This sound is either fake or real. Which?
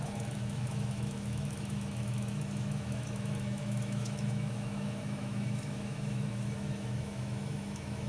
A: fake